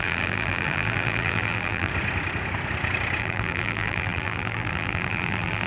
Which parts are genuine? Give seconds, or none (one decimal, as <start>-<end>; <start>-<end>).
1.9-3.2